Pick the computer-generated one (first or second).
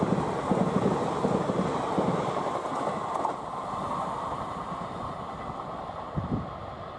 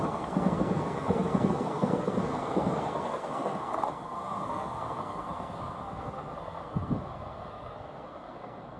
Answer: second